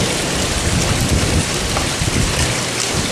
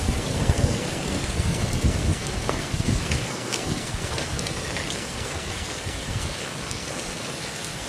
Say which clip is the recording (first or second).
first